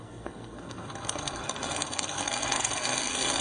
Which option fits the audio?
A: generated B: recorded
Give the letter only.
A